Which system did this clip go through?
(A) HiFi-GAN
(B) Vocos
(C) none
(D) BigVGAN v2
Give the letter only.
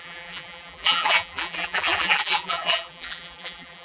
D